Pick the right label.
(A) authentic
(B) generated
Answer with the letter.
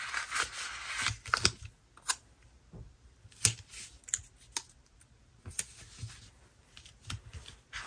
A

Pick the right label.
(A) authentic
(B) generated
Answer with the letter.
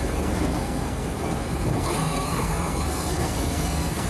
B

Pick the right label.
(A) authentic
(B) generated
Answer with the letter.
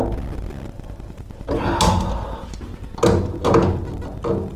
A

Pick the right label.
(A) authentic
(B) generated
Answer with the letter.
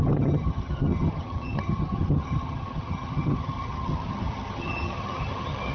B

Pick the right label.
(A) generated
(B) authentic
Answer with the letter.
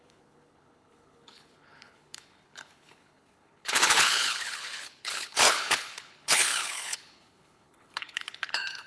A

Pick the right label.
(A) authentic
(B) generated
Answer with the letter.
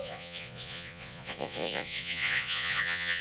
B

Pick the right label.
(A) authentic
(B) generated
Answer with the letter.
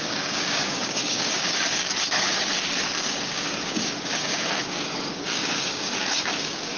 B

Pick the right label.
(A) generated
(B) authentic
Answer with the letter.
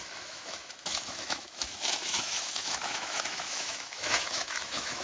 A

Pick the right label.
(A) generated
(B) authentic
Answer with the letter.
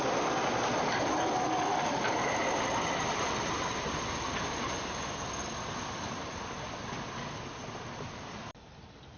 B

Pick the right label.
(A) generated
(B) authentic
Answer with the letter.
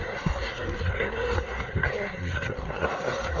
A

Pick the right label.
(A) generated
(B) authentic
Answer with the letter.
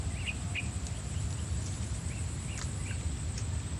B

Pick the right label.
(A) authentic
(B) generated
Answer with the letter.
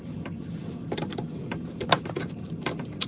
A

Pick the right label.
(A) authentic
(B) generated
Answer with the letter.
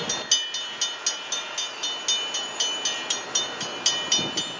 A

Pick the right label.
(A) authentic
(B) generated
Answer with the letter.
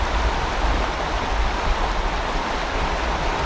A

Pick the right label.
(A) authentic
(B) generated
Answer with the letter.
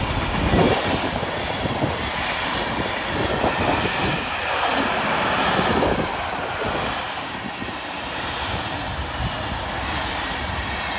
A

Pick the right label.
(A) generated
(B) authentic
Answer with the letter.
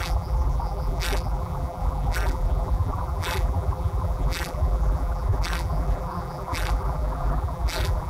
A